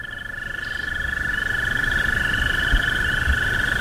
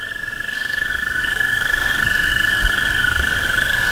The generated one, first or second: second